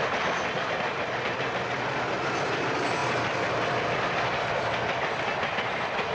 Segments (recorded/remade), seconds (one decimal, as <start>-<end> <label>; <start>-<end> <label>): 0.0-6.1 recorded